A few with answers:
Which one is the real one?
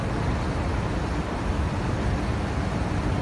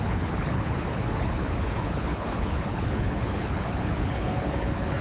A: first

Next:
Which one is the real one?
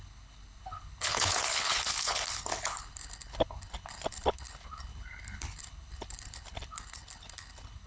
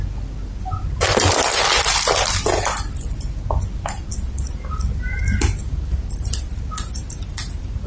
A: second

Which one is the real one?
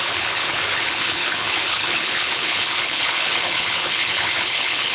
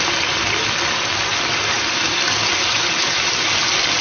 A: second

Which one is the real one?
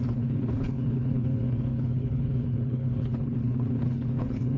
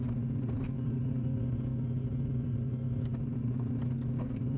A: second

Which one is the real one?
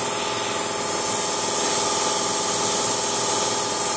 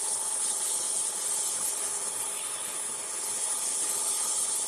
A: first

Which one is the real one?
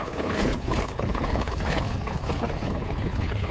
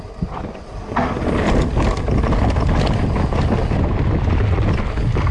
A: second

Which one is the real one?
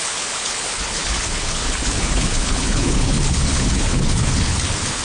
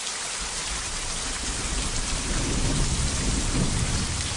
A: second